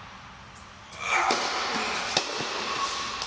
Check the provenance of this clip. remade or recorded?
recorded